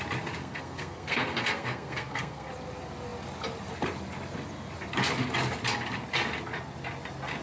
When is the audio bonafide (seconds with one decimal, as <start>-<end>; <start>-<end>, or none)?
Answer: 0.0-0.4; 2.5-7.4